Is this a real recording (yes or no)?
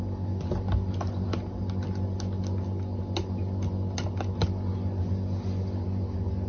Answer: yes